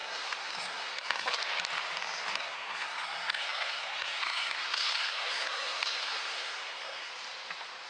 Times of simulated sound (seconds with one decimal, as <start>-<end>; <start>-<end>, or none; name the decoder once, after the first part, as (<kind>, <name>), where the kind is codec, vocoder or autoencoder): 0.0-1.4 (codec, SNAC); 2.3-7.1